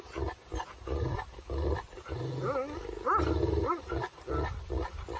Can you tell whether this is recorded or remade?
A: recorded